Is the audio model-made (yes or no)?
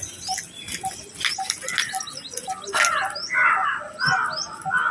no